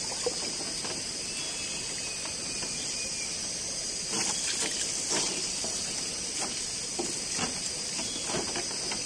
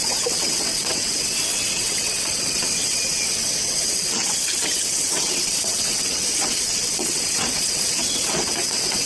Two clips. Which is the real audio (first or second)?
first